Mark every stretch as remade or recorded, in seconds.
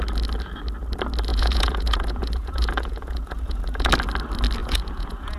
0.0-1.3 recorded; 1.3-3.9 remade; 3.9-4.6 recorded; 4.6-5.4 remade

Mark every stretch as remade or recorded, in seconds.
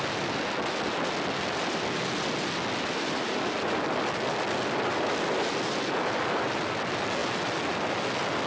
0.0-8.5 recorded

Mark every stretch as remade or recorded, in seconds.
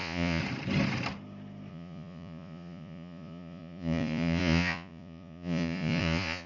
0.0-0.4 remade; 0.4-1.7 recorded; 1.7-6.5 remade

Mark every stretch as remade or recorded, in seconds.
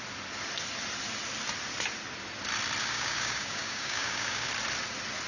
0.0-2.8 recorded; 2.8-4.5 remade; 4.5-5.3 recorded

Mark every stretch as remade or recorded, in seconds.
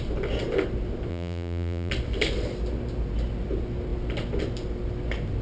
0.0-1.1 recorded; 1.1-1.9 remade; 1.9-5.4 recorded